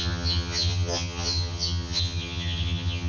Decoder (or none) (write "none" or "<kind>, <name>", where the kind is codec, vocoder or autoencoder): vocoder, HiFi-GAN